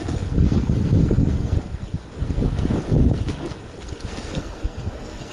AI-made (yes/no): yes